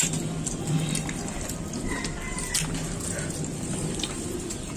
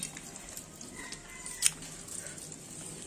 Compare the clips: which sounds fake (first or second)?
first